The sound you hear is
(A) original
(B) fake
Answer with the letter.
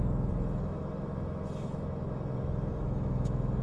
B